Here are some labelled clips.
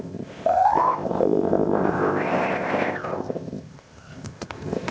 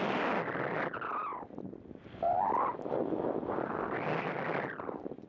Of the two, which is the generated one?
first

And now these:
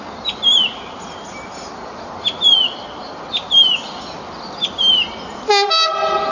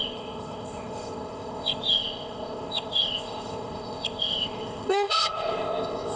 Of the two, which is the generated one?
second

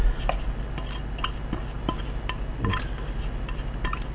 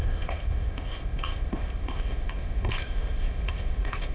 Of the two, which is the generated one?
second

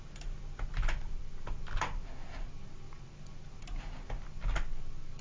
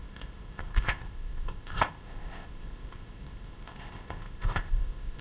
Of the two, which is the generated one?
second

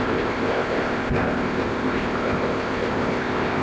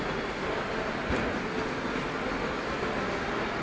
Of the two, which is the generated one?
first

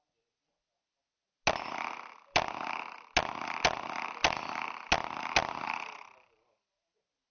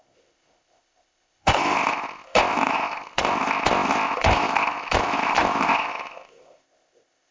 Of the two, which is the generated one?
second